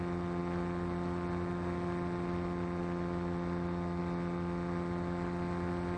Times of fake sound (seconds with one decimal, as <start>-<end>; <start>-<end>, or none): none